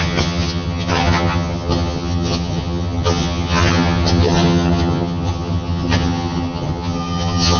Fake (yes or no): yes